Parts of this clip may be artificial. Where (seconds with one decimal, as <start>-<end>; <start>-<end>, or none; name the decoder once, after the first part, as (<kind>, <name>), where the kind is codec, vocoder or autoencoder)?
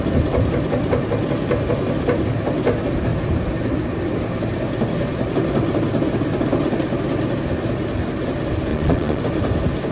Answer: 8.7-9.2 (vocoder, Vocos)